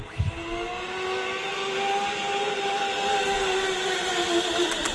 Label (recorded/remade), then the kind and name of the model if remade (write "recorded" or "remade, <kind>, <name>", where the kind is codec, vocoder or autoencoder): recorded